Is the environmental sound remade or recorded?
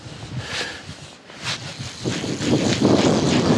recorded